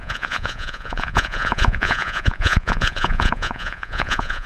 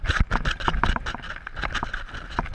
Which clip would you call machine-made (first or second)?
first